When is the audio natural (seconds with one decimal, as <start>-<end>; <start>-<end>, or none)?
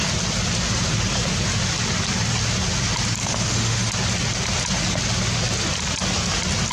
0.0-3.2; 3.9-6.7